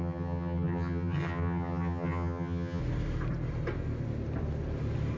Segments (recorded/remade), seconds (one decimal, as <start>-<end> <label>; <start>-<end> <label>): 0.0-2.8 remade; 2.8-5.2 recorded